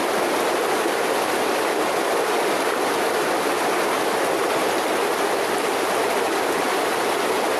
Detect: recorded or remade recorded